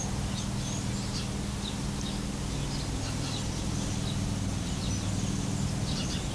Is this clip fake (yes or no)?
no